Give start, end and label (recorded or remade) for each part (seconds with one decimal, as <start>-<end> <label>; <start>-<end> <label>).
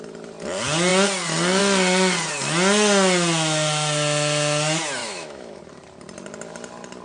0.0-5.0 recorded; 5.0-5.6 remade; 5.6-7.0 recorded